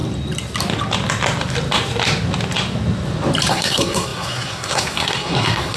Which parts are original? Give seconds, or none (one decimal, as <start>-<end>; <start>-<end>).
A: 0.0-3.5